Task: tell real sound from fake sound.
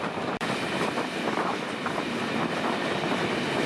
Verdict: fake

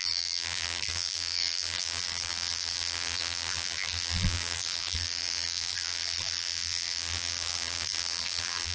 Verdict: fake